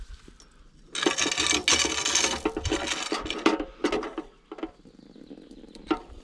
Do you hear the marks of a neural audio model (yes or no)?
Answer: no